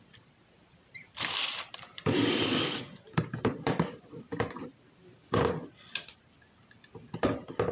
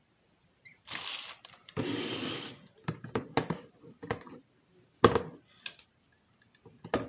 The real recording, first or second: second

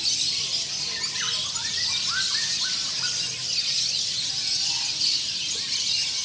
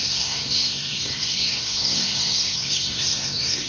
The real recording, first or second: first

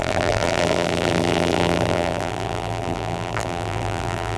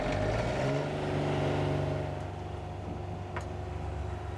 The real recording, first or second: second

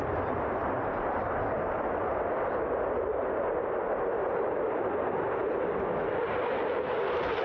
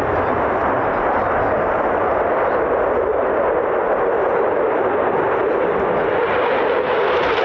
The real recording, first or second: second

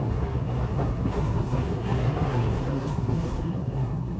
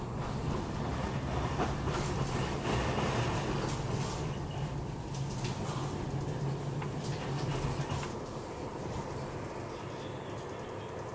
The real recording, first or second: second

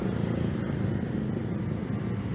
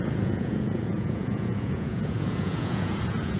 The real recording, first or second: first